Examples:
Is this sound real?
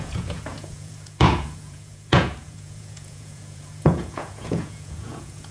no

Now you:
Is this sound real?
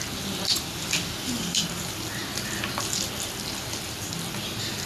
yes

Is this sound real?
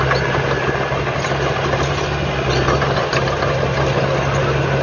yes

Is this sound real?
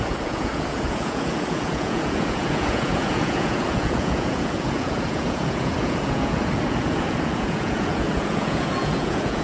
no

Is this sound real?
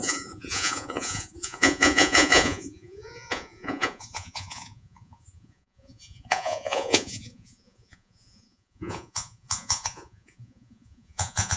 no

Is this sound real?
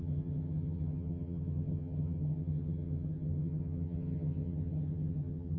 no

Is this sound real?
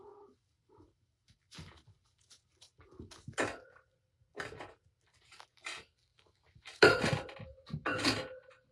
yes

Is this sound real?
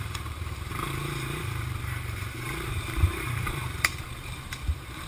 no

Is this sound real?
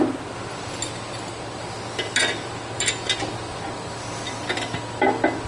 yes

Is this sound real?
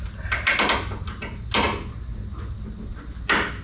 yes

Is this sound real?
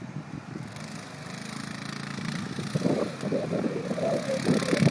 yes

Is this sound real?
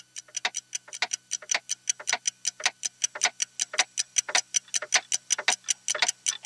yes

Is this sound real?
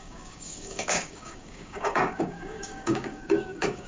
no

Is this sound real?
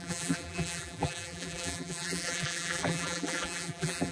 no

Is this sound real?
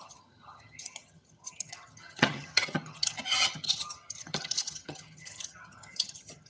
no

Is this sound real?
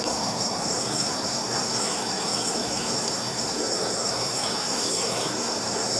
no